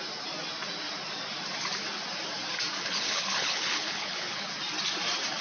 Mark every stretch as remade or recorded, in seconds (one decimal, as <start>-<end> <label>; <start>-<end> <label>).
0.0-2.8 recorded; 2.8-4.5 remade; 4.5-5.4 recorded